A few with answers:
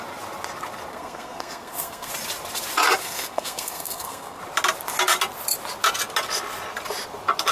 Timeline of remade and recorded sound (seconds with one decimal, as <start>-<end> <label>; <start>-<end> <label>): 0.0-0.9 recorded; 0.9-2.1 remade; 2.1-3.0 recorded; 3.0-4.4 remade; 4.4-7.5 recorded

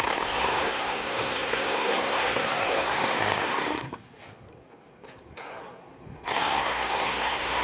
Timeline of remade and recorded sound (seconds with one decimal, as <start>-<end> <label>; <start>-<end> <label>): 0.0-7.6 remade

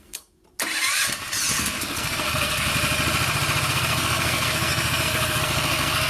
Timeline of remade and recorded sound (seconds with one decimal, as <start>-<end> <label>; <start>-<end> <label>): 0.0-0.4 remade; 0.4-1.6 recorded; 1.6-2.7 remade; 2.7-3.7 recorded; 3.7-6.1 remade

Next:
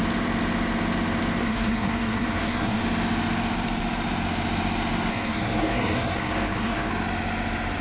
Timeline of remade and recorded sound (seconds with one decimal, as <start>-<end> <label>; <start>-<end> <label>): 0.0-1.4 recorded; 1.4-2.8 remade; 2.8-5.1 recorded; 5.1-6.9 remade; 6.9-7.8 recorded